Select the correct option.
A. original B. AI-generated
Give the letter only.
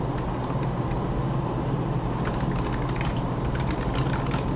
B